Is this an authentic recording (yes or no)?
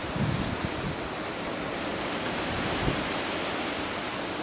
yes